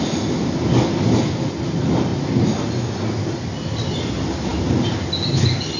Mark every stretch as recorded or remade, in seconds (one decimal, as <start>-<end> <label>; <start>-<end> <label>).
0.0-5.8 recorded